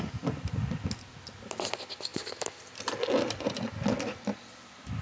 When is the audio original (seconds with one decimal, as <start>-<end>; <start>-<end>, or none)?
0.0-5.0